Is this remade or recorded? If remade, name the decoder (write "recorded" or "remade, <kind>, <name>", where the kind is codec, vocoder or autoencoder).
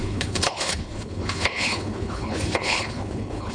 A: remade, codec, HILCodec